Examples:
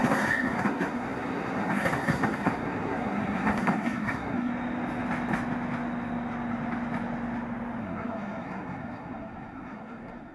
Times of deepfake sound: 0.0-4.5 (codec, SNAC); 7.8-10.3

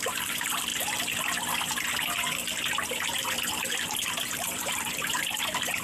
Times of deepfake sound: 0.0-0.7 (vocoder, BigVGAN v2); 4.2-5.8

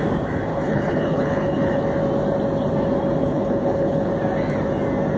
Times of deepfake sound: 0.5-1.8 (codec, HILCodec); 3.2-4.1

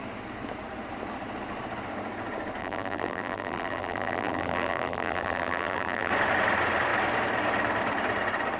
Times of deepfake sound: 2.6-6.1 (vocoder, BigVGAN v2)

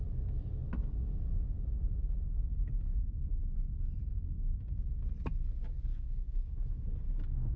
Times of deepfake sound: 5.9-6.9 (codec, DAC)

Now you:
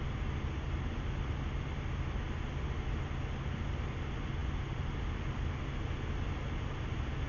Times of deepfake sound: none